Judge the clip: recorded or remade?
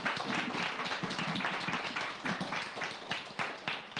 recorded